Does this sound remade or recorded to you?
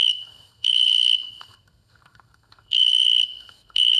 remade